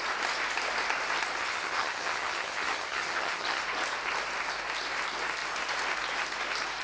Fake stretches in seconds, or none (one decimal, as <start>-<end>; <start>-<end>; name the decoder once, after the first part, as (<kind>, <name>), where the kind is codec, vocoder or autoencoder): 1.4-3.6 (vocoder, HiFi-GAN)